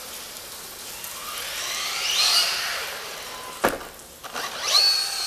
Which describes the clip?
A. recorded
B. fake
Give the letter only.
A